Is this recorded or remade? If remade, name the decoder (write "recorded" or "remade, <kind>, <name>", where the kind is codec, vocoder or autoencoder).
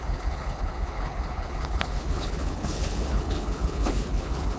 remade, codec, HILCodec